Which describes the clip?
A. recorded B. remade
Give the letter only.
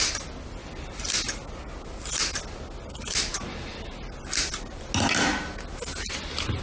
A